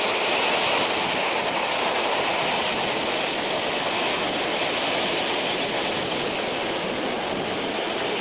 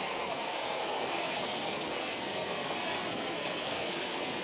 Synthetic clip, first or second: second